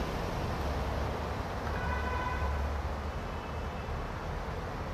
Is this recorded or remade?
recorded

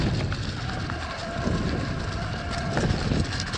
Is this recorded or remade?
recorded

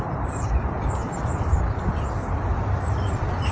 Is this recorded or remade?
remade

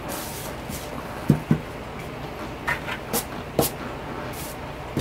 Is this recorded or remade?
recorded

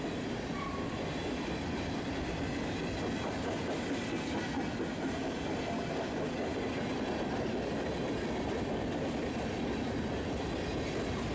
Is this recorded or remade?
recorded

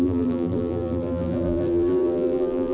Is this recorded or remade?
remade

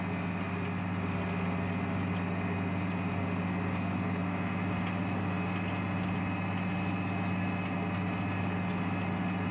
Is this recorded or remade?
recorded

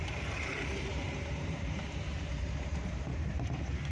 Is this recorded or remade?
remade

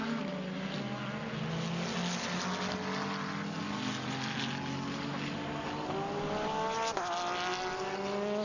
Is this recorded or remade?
recorded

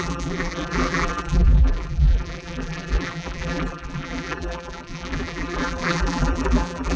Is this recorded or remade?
remade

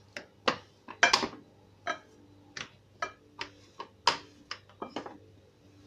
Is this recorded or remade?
recorded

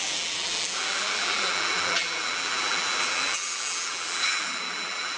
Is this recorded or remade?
remade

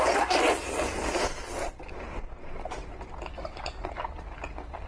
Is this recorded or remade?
recorded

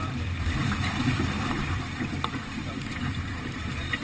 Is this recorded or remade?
remade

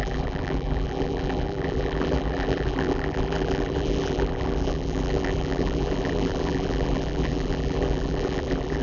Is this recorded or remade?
remade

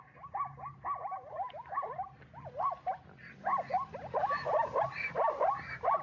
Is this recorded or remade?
recorded